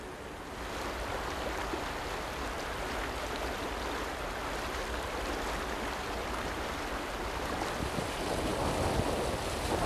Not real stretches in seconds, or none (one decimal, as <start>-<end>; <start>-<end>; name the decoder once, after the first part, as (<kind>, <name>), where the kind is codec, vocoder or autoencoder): none

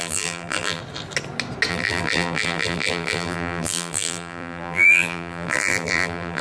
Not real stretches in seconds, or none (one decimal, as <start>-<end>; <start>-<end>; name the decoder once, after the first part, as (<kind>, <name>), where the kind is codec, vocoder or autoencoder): 0.0-0.8 (vocoder, BigVGAN v2); 1.7-6.4

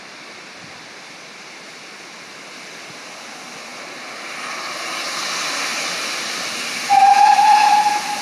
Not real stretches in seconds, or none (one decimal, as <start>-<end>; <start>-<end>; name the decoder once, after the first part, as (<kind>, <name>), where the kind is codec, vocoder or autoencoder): 5.7-8.2 (vocoder, BigVGAN v2)

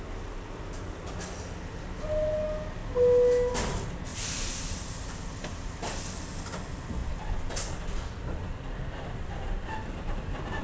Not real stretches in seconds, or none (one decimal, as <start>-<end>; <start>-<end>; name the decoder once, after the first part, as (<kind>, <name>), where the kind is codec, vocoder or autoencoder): 4.1-5.8 (vocoder, BigVGAN v2)

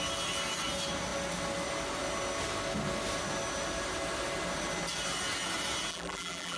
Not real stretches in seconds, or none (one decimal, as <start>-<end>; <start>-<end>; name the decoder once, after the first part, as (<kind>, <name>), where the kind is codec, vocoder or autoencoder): 5.9-6.6 (vocoder, BigVGAN v2)

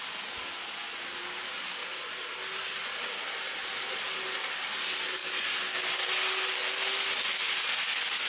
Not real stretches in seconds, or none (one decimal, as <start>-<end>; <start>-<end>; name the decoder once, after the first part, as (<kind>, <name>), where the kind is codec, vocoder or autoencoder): none

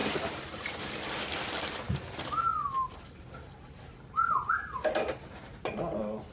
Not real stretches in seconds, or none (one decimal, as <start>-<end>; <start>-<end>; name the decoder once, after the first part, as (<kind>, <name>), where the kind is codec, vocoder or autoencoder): 0.0-0.7 (vocoder, BigVGAN v2)

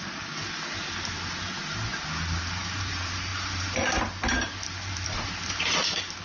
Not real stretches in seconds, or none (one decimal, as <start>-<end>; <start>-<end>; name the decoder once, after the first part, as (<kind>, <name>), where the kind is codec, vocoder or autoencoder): 0.0-0.4 (vocoder, BigVGAN v2); 2.4-6.2